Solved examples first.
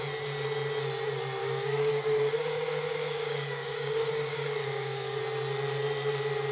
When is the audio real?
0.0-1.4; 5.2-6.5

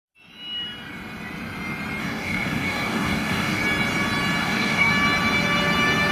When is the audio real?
0.0-2.0; 3.6-4.4; 4.9-6.1